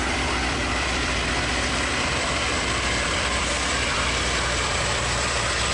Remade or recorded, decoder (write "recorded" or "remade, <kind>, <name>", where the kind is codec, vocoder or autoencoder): remade, vocoder, BigVGAN v2